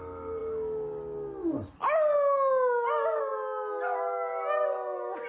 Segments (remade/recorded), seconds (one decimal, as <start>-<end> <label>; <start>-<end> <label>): 0.0-5.3 recorded